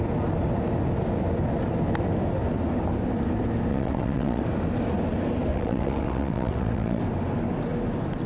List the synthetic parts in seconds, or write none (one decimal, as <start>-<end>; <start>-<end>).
3.7-4.4; 5.5-7.0